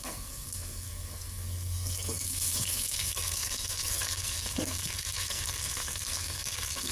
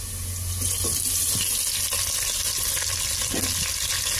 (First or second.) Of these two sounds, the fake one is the first